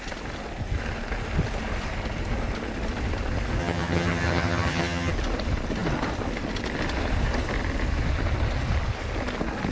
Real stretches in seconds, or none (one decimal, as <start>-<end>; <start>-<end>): 0.0-3.6; 5.1-9.7

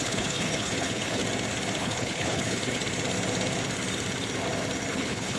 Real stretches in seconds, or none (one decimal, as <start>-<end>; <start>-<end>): 1.2-1.8; 2.8-4.9